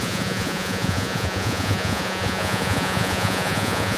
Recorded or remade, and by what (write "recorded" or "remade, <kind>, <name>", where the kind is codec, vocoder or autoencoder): remade, vocoder, Vocos